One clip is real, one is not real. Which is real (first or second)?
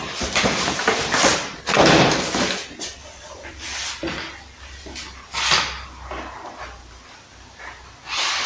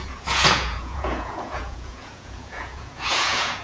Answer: first